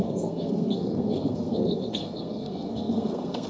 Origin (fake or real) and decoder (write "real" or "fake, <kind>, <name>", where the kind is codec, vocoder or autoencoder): fake, codec, SNAC